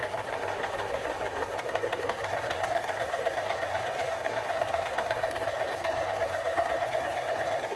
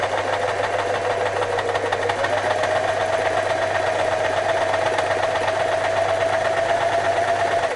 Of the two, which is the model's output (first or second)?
first